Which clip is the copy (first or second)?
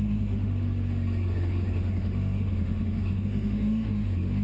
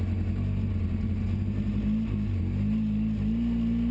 first